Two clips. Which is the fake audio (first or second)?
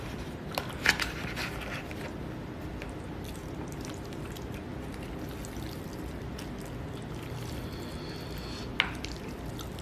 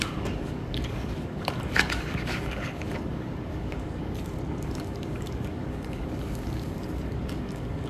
second